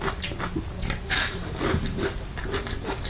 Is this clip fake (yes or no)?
no